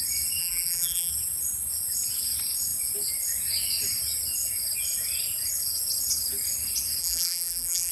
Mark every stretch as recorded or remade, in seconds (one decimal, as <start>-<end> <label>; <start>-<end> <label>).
0.0-0.4 recorded; 0.4-1.1 remade; 1.1-7.0 recorded; 7.0-7.9 remade